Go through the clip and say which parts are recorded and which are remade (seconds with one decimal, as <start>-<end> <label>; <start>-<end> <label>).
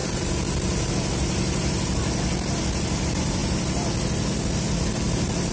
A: 0.0-5.5 recorded